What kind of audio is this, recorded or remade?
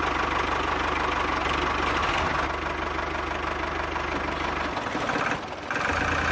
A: recorded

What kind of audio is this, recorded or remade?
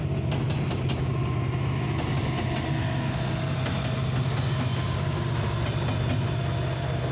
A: recorded